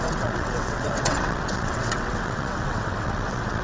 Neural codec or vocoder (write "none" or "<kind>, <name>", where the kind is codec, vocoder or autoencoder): vocoder, WaveNeXt